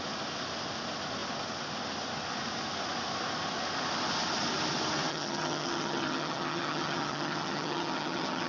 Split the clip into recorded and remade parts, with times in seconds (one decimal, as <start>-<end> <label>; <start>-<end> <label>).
0.0-5.1 recorded; 5.1-8.5 remade